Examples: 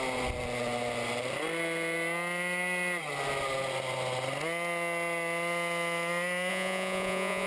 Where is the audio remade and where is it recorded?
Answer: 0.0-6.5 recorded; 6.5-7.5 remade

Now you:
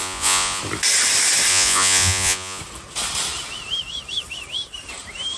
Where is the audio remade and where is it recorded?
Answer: 0.0-0.6 remade; 0.6-1.5 recorded; 1.5-2.6 remade; 2.6-5.4 recorded

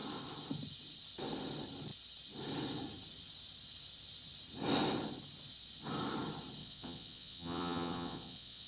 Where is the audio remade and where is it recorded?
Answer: 0.0-6.6 recorded; 6.6-8.7 remade

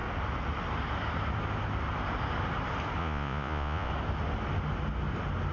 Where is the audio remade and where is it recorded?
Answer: 0.0-3.0 recorded; 3.0-3.9 remade; 3.9-5.5 recorded

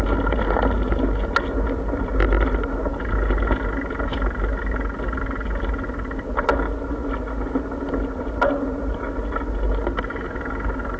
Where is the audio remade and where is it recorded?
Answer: 0.0-11.0 recorded

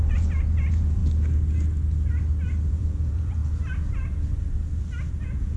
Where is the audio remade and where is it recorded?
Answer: 0.0-1.0 remade; 1.0-2.7 recorded; 2.7-3.4 remade; 3.4-5.1 recorded; 5.1-5.6 remade

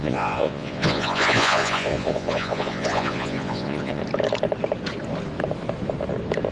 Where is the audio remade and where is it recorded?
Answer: 0.0-4.0 remade; 4.0-6.5 recorded

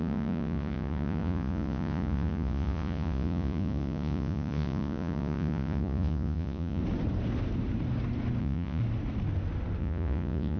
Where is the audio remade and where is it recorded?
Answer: 0.0-6.8 remade; 6.8-8.4 recorded; 8.4-8.8 remade; 8.8-9.8 recorded; 9.8-10.6 remade